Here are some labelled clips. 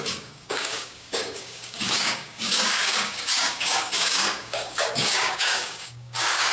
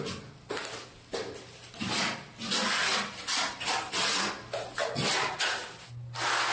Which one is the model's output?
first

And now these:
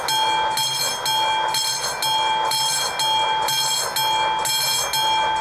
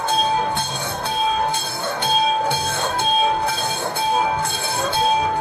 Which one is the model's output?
second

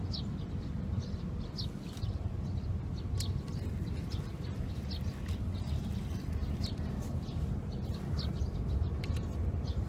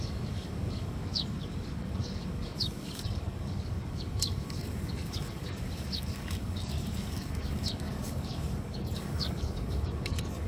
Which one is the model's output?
second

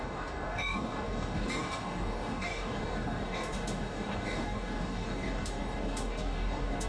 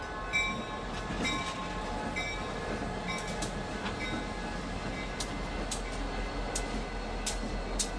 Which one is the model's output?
first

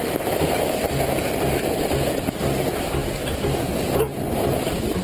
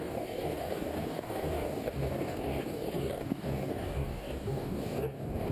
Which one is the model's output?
second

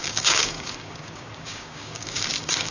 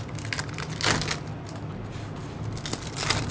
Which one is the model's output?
first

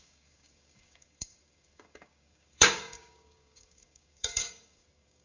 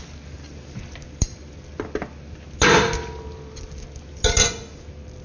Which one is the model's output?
first